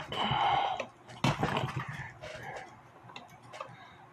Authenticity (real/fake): real